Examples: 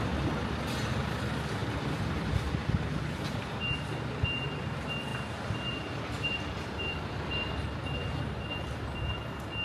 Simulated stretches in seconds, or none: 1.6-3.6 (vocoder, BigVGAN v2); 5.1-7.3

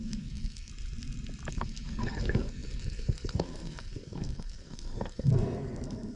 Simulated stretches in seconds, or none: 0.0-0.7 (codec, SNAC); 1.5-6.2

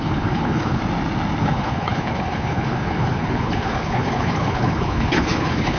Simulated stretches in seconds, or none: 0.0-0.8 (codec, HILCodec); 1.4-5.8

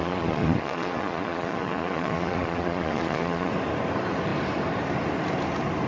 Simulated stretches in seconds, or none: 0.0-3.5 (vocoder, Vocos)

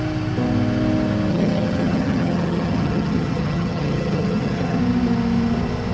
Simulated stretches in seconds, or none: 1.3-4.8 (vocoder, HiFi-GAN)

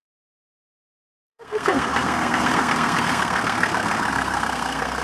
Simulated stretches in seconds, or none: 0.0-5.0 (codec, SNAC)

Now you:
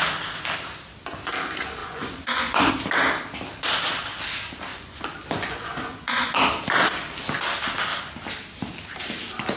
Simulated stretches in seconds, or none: 1.8-2.7 (vocoder, Vocos); 4.7-6.4

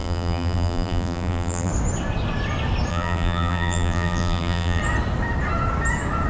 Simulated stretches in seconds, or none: 0.0-1.7 (vocoder, BigVGAN v2); 2.9-4.8